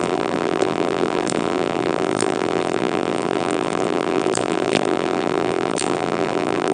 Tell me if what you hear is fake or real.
fake